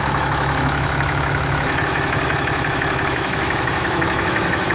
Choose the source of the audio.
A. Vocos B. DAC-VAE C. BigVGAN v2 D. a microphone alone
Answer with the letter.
B